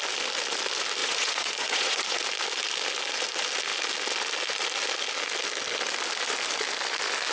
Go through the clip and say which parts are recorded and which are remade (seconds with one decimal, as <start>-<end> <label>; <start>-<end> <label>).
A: 0.0-1.0 recorded; 1.0-2.2 remade; 2.2-7.3 recorded